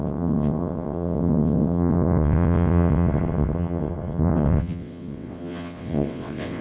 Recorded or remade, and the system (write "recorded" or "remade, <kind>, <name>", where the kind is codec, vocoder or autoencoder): remade, vocoder, WaveNeXt